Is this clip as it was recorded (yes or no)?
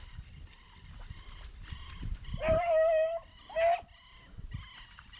yes